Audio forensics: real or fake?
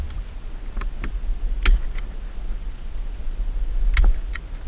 real